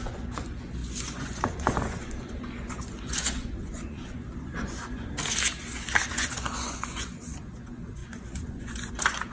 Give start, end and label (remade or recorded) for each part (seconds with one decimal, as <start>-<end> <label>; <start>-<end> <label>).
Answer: 0.0-5.1 remade; 5.1-6.1 recorded; 6.1-9.3 remade